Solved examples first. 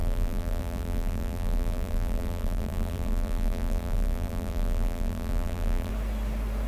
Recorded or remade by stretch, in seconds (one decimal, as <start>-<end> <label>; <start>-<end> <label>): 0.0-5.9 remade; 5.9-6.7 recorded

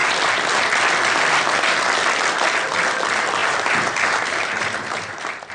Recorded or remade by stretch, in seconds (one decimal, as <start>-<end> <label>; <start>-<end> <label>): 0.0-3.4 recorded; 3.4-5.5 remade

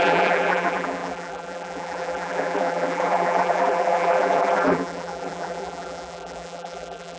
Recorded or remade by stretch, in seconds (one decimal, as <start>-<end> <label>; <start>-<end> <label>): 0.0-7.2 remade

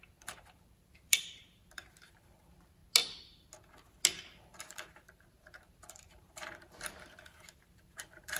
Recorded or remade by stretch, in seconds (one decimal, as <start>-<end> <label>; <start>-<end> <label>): 0.0-1.6 remade; 1.6-2.1 recorded; 2.1-2.8 remade; 2.8-4.4 recorded; 4.4-8.4 remade